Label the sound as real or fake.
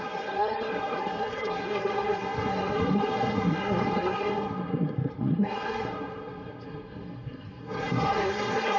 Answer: fake